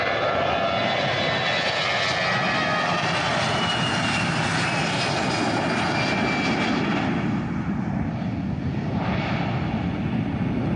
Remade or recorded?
recorded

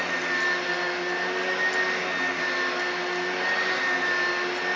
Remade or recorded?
recorded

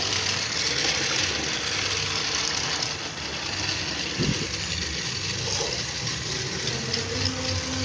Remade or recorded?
recorded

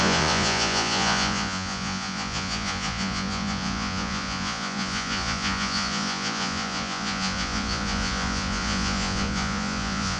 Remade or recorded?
remade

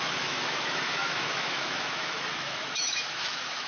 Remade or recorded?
remade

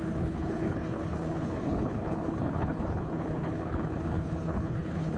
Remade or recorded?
remade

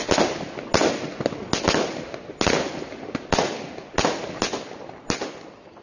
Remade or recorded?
recorded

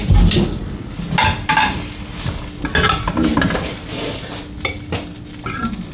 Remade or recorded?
recorded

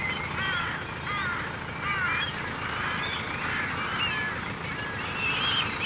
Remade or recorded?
recorded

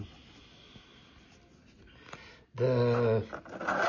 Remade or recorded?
recorded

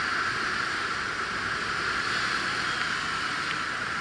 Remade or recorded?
recorded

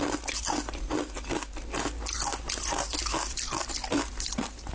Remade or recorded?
recorded